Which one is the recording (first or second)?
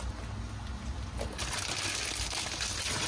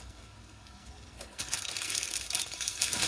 first